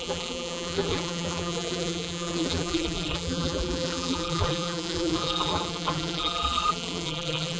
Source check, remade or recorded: remade